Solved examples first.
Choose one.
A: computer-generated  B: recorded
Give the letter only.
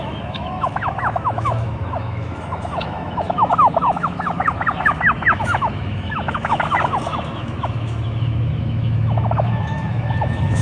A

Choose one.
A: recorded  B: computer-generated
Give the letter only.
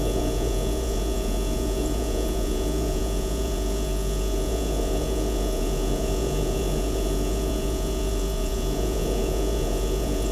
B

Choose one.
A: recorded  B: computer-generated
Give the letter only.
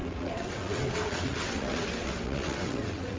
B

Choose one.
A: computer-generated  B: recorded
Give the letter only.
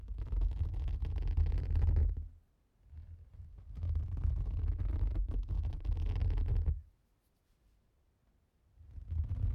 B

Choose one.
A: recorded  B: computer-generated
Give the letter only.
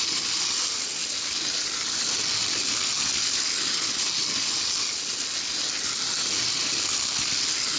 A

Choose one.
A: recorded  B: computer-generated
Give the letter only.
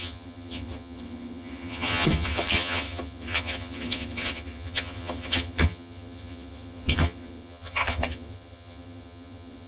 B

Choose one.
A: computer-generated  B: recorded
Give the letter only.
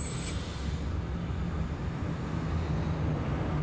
B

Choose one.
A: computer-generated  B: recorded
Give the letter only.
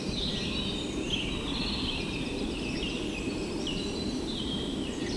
A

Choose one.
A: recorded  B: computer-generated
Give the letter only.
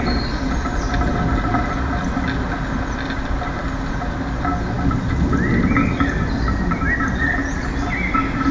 A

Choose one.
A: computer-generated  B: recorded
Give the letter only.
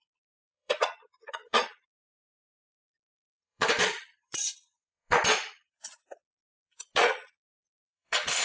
A